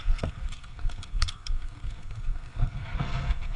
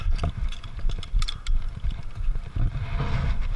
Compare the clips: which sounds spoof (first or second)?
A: first